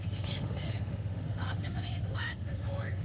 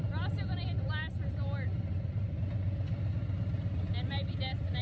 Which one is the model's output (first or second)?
first